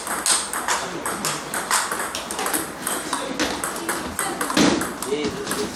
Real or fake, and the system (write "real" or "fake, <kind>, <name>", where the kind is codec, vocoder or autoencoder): real